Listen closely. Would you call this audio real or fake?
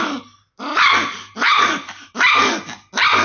real